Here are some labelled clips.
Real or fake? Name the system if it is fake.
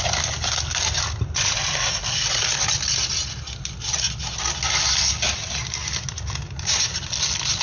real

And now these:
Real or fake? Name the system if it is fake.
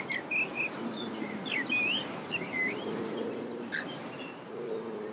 real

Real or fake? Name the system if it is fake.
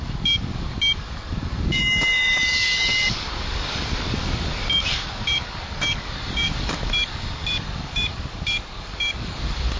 fake, codec, DAC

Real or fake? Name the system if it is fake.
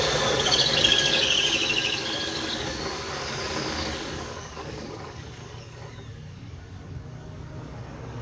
fake, codec, DAC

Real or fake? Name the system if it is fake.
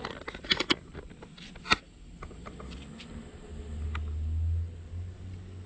real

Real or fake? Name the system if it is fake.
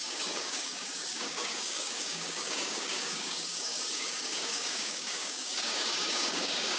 fake, codec, DAC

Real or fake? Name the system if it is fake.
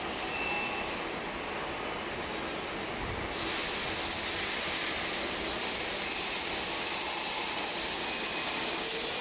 real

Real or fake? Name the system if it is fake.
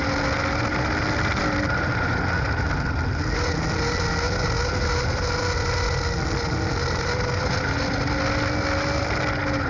real